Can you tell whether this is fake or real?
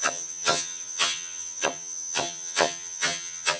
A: fake